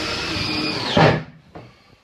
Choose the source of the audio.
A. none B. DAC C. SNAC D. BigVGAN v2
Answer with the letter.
A